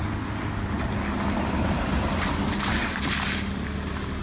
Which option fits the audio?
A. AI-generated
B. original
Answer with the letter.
B